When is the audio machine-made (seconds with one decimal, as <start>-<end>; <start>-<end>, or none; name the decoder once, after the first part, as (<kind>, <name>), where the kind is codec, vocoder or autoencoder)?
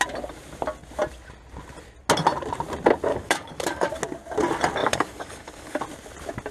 3.1-3.9 (codec, DAC); 4.8-5.8